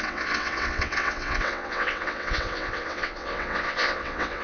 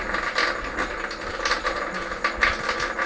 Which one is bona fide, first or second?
second